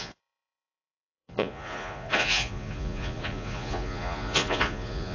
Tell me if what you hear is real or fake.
fake